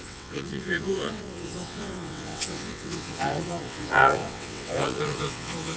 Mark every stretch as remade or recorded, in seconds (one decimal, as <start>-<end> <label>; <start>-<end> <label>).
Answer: 0.0-5.8 remade